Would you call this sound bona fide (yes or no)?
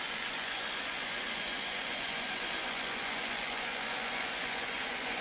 no